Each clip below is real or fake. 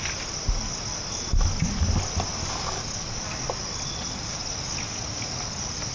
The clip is real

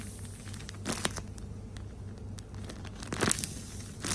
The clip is real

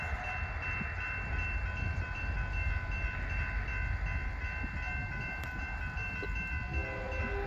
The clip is real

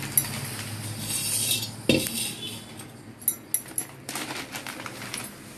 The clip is real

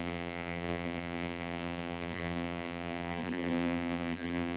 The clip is fake